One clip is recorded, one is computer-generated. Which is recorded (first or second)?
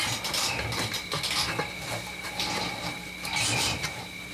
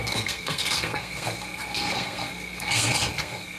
first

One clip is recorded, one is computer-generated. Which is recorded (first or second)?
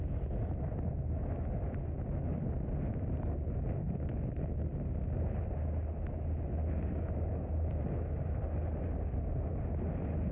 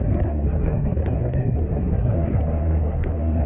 first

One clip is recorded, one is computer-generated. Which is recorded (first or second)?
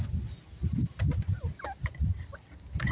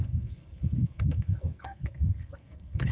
first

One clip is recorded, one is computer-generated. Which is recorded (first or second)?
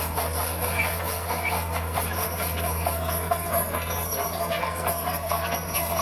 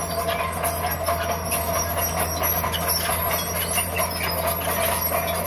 second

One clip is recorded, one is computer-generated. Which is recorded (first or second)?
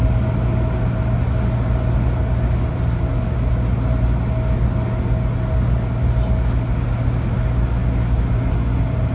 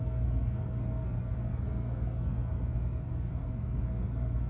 first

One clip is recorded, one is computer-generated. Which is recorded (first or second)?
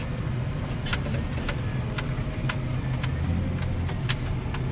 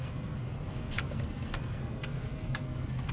first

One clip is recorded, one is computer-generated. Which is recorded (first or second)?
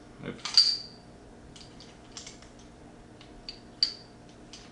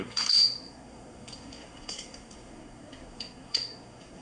first